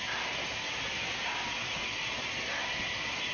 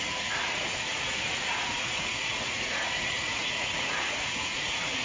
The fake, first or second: second